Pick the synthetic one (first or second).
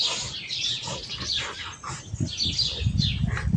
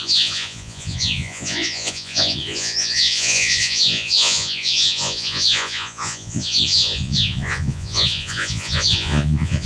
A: second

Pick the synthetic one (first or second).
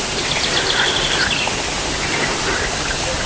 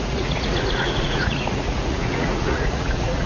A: second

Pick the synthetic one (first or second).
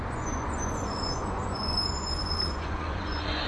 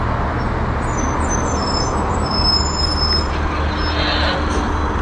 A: first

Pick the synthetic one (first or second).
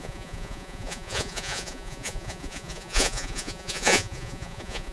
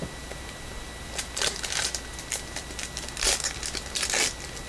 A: first